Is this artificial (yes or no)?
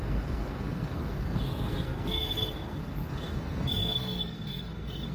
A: yes